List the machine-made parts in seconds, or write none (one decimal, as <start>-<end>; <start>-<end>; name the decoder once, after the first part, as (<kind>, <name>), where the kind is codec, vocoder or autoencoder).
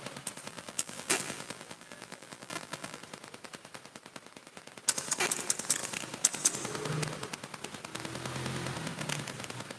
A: 0.5-3.0 (vocoder, BigVGAN v2)